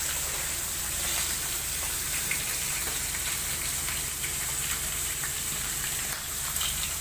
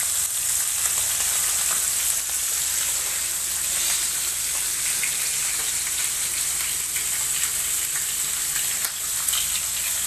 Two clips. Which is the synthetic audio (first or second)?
first